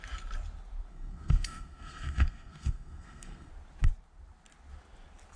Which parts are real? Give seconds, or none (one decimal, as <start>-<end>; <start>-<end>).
0.0-0.9; 3.5-5.4